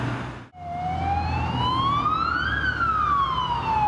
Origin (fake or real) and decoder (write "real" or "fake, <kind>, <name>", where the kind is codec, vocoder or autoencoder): real